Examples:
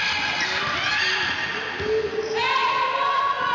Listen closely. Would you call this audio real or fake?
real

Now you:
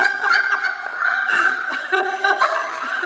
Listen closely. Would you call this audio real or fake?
fake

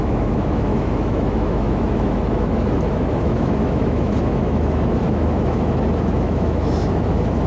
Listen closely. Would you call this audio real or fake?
fake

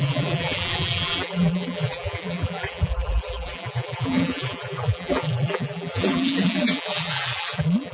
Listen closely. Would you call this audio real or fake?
fake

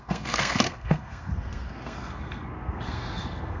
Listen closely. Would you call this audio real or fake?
fake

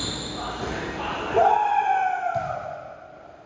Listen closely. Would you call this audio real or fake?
real